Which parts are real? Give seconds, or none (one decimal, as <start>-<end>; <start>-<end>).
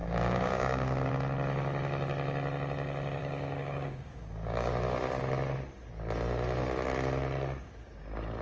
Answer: 1.1-3.2; 4.7-8.4